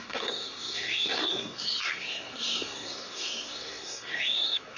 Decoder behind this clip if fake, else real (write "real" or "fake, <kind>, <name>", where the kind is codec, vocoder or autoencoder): fake, codec, SNAC